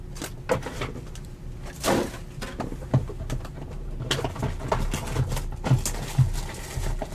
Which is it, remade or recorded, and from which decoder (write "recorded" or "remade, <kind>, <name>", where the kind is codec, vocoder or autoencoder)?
recorded